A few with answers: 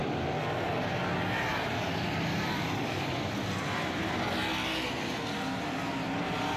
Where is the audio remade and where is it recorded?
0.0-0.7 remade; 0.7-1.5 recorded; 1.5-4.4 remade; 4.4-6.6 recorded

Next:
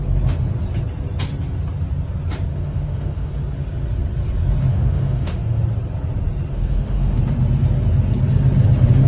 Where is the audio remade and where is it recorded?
0.0-2.5 recorded; 2.5-3.3 remade; 3.3-4.7 recorded; 4.7-5.6 remade; 5.6-6.5 recorded; 6.5-7.2 remade; 7.2-9.1 recorded

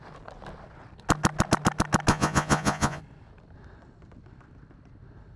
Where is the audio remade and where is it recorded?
0.0-2.1 recorded; 2.1-3.0 remade; 3.0-5.4 recorded